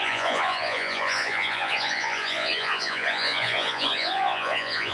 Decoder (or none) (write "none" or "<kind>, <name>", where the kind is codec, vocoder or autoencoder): vocoder, Vocos